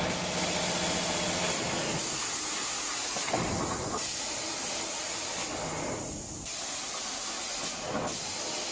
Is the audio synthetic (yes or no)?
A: no